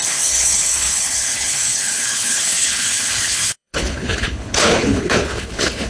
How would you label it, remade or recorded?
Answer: remade